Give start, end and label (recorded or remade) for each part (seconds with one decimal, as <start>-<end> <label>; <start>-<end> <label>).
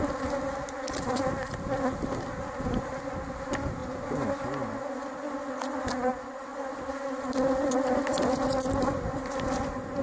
0.0-10.0 recorded